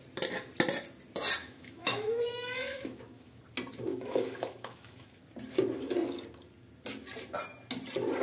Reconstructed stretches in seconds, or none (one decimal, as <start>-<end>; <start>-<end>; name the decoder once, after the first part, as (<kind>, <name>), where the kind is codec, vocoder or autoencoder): 1.4-3.4 (autoencoder, DAC-VAE); 3.9-5.2